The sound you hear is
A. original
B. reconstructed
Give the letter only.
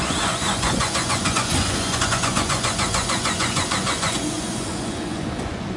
B